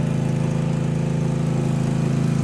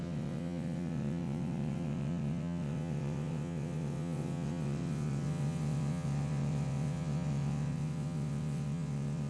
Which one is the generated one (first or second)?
second